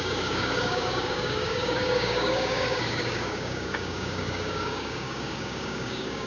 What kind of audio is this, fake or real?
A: fake